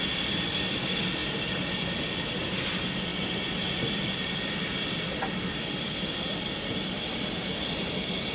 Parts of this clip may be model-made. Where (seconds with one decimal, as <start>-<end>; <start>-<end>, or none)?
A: 0.0-1.2; 1.9-3.1; 3.8-6.7; 7.8-8.3